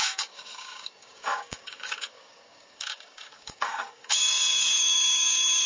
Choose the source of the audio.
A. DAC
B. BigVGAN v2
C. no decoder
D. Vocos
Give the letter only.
A